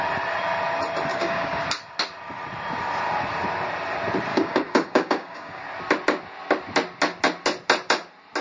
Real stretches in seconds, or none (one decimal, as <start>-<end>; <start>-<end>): 0.0-1.1; 1.6-4.3; 5.6-8.4